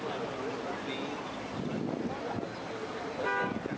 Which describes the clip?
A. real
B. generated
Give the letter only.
A